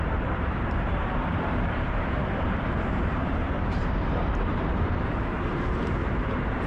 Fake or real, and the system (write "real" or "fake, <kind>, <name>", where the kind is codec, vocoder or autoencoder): fake, vocoder, BigVGAN v2